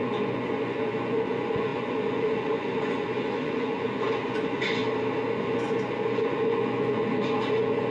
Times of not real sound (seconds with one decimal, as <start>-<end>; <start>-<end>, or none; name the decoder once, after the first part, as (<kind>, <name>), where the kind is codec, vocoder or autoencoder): 0.0-4.8 (vocoder, Vocos); 5.3-7.9